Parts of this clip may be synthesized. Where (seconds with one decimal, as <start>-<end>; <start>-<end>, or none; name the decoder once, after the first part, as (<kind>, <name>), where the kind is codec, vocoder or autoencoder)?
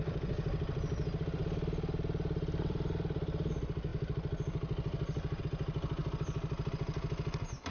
1.4-3.5 (vocoder, BigVGAN v2); 6.0-6.7